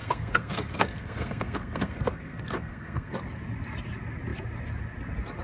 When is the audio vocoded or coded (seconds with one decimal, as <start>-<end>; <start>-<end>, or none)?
0.0-3.2